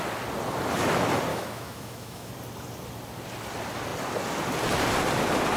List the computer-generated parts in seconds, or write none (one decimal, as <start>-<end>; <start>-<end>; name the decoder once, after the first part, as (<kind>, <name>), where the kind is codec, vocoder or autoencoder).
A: 1.3-2.3 (autoencoder, DAC-VAE)